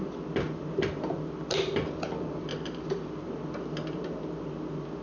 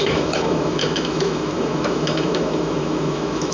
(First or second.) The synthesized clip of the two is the second